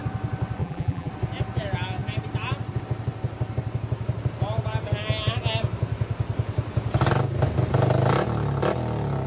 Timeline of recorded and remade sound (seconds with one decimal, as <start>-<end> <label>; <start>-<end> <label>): 0.0-0.6 recorded; 0.6-1.1 remade; 1.1-9.3 recorded